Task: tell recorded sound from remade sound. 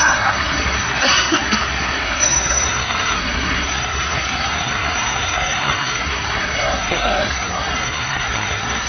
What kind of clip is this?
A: remade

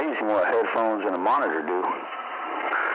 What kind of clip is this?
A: recorded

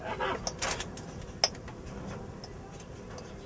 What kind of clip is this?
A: recorded